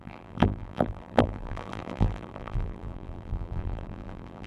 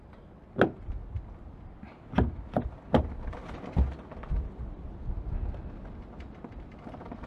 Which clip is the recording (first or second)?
second